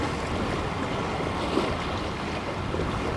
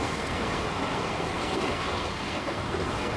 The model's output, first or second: second